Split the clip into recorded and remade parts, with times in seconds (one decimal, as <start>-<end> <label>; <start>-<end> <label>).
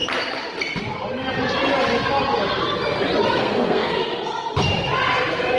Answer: 0.0-3.4 recorded; 3.4-4.0 remade; 4.0-5.6 recorded